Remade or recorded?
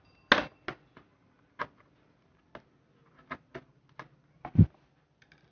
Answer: recorded